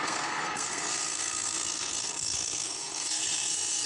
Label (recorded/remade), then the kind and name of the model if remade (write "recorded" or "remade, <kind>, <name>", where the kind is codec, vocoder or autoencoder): remade, codec, SNAC